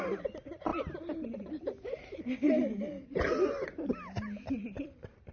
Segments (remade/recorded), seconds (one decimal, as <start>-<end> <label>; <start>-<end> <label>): 0.0-5.3 remade